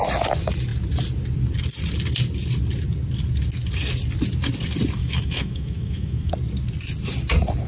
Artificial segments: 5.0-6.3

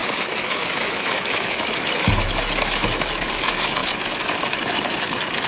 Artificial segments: 0.0-5.5

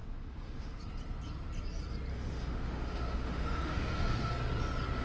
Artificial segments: 0.0-0.8; 2.1-4.3

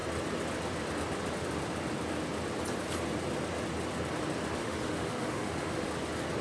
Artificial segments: 4.6-5.9

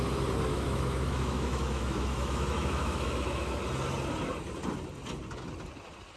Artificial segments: 0.5-3.6

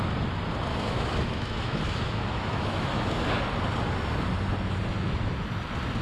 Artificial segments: 0.7-3.4

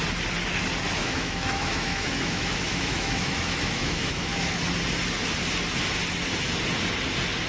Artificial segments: 1.0-4.6

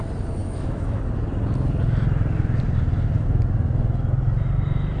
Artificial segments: 0.4-1.0